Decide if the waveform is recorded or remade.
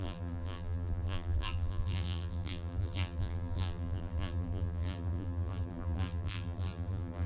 remade